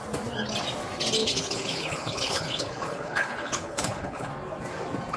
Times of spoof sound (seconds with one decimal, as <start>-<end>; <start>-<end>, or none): 1.2-4.3

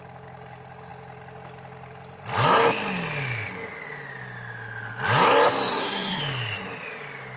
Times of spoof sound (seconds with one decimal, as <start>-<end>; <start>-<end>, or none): 5.7-6.2